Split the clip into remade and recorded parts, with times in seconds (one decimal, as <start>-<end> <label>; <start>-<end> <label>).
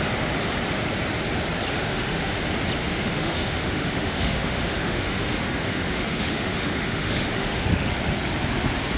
0.0-1.7 recorded; 1.7-2.4 remade; 2.4-2.8 recorded; 2.8-7.9 remade; 7.9-9.0 recorded